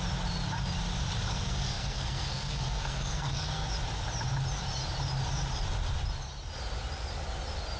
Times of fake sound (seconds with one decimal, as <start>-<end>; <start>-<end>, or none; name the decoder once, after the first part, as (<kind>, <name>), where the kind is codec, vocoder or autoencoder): 1.3-3.7 (codec, SNAC)